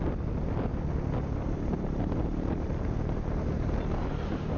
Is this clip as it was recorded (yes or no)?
yes